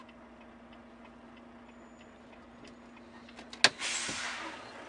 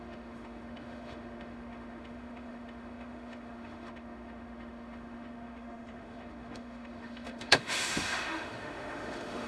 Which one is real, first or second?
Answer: first